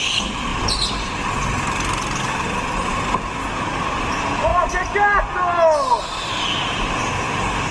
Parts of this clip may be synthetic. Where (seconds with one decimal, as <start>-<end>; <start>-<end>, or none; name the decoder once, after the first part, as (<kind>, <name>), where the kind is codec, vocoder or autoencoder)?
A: none